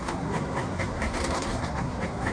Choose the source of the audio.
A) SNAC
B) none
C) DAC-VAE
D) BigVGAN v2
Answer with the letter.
A